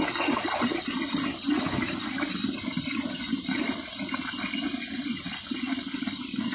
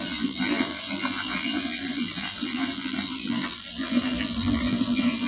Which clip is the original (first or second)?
first